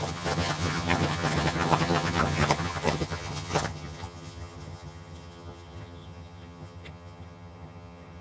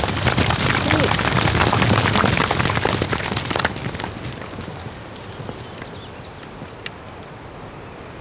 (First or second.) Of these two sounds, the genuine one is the second